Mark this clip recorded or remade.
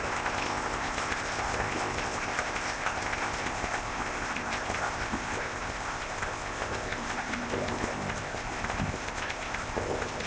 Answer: remade